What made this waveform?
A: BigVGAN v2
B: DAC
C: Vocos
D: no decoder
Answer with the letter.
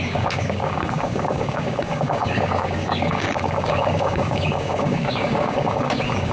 B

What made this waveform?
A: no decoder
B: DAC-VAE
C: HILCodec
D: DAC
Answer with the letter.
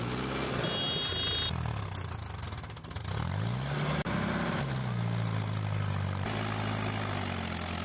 A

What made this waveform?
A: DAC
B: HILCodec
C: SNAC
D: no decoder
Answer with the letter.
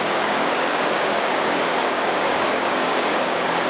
A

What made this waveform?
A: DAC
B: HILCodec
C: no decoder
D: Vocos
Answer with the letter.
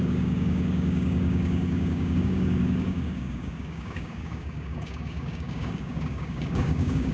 A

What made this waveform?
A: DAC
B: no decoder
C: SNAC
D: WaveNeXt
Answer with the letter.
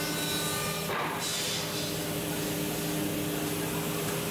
B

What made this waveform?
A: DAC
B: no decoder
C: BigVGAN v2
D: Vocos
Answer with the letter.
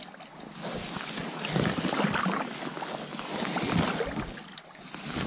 B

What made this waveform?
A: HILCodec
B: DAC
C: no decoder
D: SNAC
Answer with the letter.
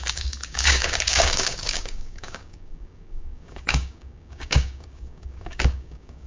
B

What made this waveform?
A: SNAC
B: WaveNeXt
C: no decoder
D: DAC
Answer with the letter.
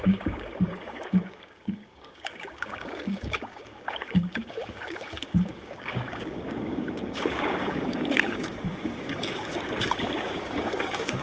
D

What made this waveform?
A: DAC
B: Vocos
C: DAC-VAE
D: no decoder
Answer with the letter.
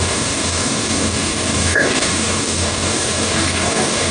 A